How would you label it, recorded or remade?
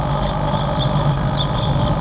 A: recorded